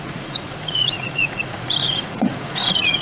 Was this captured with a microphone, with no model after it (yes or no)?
no